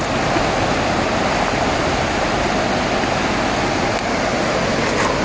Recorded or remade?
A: recorded